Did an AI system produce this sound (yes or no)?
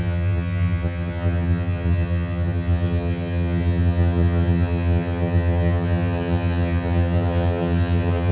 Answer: yes